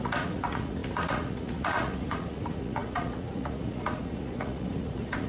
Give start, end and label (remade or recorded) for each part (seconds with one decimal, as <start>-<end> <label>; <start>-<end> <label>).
0.0-5.3 remade